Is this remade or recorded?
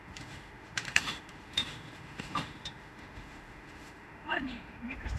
remade